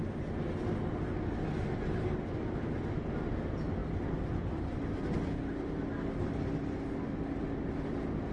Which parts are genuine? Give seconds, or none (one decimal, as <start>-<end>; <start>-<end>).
0.0-8.3